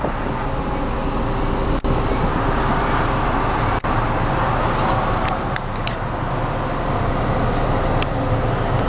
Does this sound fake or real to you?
real